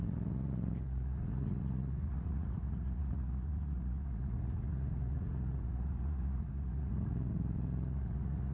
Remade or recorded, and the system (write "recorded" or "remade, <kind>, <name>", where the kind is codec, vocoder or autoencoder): remade, vocoder, Vocos